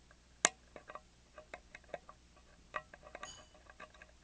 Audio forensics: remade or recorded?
recorded